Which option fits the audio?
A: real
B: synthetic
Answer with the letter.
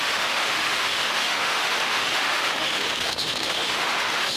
B